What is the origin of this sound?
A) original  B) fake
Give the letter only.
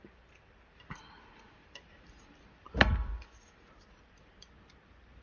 A